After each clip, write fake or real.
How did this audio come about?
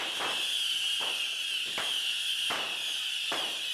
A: real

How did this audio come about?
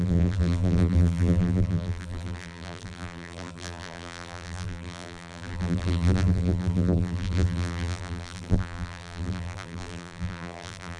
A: fake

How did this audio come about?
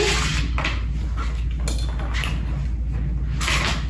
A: real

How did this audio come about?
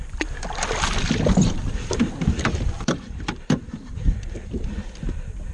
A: fake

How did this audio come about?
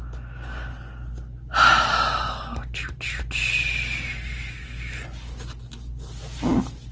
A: real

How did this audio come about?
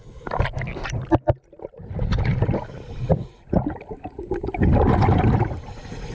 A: real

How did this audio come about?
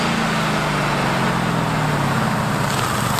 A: real